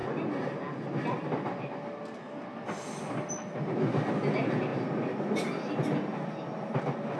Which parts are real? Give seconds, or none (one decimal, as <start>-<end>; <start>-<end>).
0.0-7.2